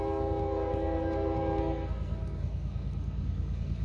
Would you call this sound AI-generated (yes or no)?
yes